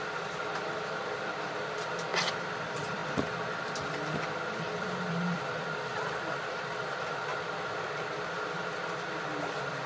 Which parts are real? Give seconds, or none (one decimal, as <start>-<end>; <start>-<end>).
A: 2.1-2.6; 3.0-4.6